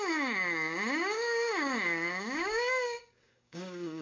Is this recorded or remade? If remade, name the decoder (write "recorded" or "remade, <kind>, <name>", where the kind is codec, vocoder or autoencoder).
remade, codec, DAC